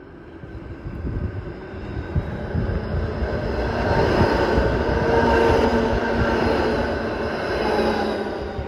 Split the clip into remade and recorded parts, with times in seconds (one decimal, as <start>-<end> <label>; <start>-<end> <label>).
0.0-8.7 recorded